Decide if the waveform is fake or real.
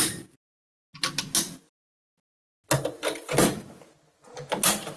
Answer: real